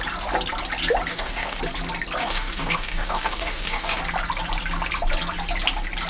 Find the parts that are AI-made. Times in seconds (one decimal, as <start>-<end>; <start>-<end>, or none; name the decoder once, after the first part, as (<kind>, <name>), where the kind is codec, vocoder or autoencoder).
1.1-1.6 (codec, DAC); 2.2-4.0